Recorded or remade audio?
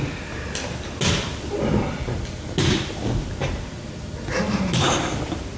recorded